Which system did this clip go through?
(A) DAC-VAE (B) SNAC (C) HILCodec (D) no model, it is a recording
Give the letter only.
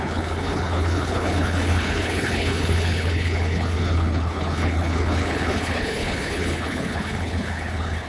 C